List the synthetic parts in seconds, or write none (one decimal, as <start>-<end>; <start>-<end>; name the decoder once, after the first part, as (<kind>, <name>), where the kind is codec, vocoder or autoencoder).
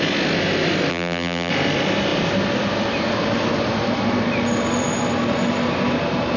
0.9-1.5 (vocoder, BigVGAN v2)